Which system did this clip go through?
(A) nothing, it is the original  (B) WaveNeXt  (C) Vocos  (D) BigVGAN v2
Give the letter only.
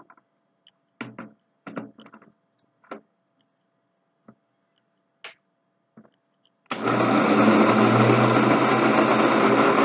A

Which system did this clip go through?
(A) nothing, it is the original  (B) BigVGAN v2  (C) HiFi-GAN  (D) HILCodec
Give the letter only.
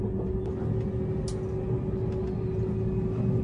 A